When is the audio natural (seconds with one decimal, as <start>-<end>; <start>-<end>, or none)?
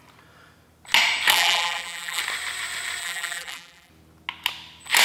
0.0-1.3; 2.2-3.0; 3.9-5.0